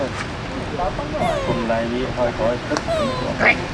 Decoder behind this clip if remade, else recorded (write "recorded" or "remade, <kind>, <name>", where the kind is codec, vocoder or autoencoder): recorded